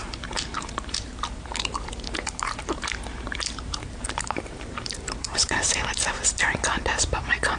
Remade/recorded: remade